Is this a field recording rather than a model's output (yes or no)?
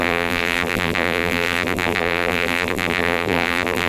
no